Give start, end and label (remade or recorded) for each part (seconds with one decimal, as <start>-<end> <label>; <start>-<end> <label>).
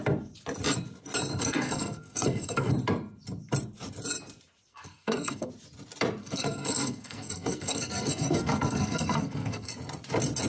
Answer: 0.0-1.3 recorded; 1.3-2.7 remade; 2.7-4.7 recorded; 4.7-5.5 remade; 5.5-6.2 recorded; 6.2-9.7 remade; 9.7-10.5 recorded